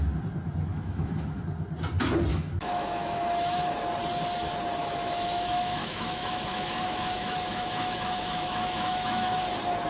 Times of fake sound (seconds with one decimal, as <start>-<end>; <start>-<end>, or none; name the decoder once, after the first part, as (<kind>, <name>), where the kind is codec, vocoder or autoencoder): 0.7-1.4 (autoencoder, DAC-VAE); 2.3-3.7; 4.8-9.4